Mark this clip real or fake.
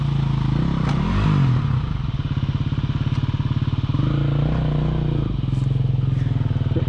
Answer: real